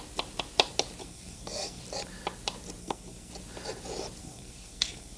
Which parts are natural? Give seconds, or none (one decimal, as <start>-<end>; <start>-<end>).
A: 0.0-1.0; 1.8-2.8; 3.3-4.2